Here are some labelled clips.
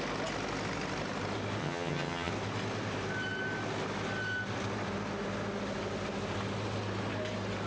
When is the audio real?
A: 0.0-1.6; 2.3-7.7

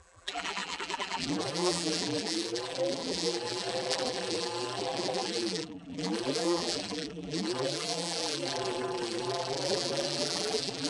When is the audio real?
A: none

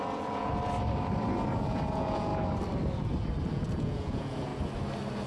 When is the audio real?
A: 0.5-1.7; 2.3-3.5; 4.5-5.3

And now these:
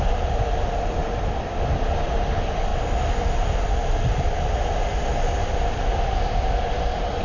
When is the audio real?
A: 0.0-1.0; 2.0-2.7; 4.6-7.2

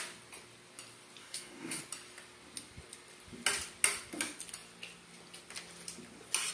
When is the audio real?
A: 0.0-1.2; 1.8-6.5

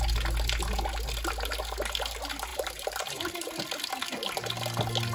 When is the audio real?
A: 0.0-2.5; 3.3-5.1